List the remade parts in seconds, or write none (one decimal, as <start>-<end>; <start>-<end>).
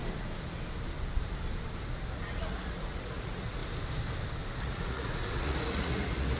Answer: 2.1-3.6; 4.6-6.4